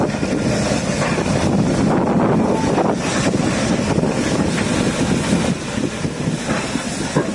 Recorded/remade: recorded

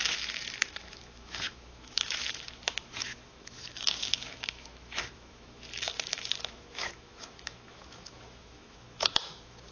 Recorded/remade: remade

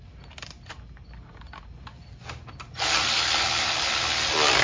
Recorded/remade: recorded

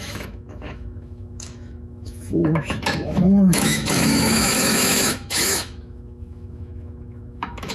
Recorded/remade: remade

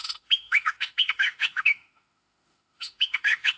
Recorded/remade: remade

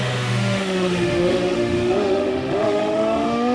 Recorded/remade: remade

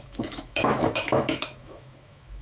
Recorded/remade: remade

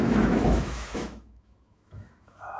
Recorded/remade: remade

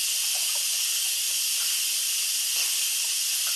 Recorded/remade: recorded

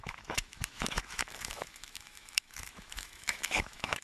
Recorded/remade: remade